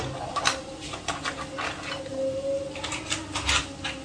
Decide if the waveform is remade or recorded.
recorded